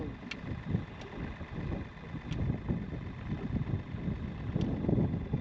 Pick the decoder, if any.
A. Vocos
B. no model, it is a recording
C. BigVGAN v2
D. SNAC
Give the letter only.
B